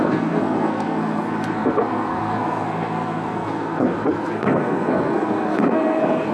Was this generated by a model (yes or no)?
yes